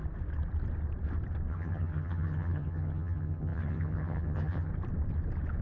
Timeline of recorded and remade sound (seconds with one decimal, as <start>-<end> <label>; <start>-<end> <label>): 0.0-1.5 recorded; 1.5-4.7 remade; 4.7-5.6 recorded